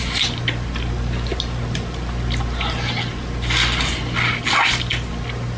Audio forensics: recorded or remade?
recorded